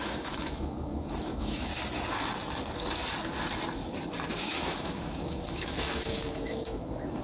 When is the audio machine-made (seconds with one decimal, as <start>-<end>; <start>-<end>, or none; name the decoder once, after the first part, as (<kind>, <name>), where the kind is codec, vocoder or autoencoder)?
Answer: 0.0-1.7 (autoencoder, DAC-VAE); 4.4-7.2